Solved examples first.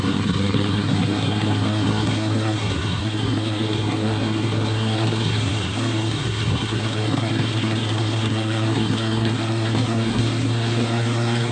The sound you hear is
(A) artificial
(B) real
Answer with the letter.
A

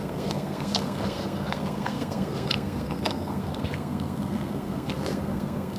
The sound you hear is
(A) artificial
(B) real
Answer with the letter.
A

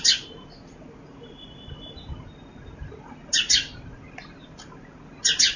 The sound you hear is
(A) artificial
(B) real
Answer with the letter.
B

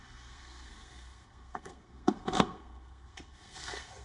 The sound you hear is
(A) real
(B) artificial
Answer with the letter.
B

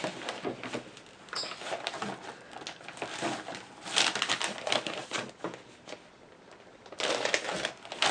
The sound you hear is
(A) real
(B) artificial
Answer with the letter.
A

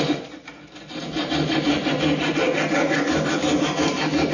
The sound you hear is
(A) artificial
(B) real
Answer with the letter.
B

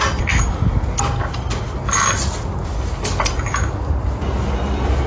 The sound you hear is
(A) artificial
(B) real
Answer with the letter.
B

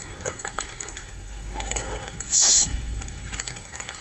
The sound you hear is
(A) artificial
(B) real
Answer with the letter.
A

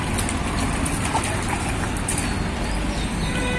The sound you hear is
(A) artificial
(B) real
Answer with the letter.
B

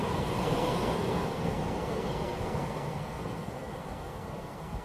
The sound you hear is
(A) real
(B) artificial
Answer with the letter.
B